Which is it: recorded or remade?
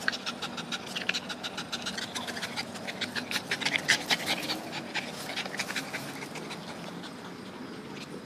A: recorded